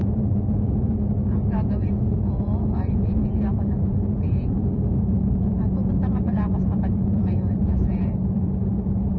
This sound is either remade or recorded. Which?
remade